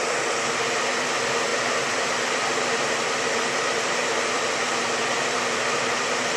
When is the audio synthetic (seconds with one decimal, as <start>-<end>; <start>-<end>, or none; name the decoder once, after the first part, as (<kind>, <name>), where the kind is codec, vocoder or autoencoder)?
0.0-6.4 (vocoder, BigVGAN v2)